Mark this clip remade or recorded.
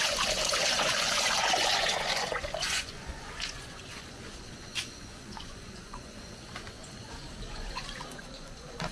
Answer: remade